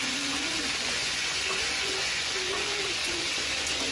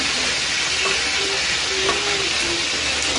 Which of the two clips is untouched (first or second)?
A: second